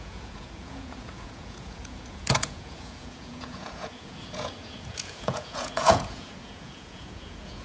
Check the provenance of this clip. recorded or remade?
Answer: remade